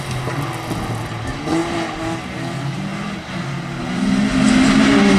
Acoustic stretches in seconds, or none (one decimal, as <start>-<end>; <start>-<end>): 0.0-5.2